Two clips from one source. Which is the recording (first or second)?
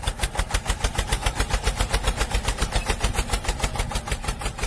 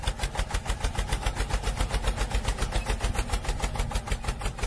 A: second